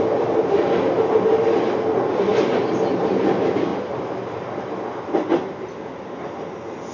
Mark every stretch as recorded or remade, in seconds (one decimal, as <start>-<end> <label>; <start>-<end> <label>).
0.0-2.3 recorded; 2.3-2.8 remade; 2.8-3.7 recorded; 3.7-4.6 remade; 4.6-6.9 recorded